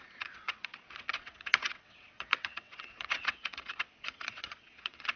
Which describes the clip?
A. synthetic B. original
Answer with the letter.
A